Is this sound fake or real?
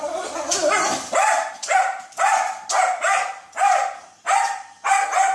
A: real